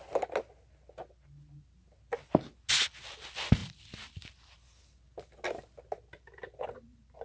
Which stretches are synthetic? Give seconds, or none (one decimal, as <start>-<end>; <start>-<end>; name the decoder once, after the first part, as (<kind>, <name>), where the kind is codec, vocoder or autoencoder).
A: none